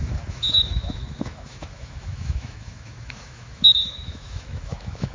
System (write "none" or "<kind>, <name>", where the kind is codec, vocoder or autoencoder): autoencoder, DAC-VAE